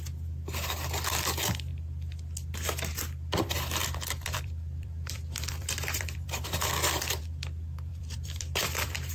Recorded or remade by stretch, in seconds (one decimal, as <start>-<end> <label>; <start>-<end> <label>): 0.0-3.8 recorded; 3.8-7.2 remade; 7.2-7.9 recorded; 7.9-9.1 remade